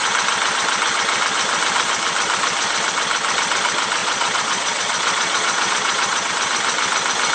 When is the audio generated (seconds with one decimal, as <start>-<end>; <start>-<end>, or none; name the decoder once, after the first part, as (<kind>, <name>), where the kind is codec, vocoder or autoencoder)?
4.0-6.3 (vocoder, Vocos)